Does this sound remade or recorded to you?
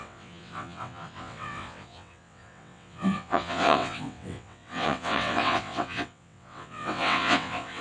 remade